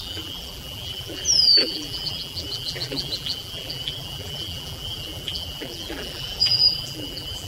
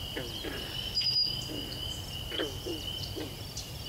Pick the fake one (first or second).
first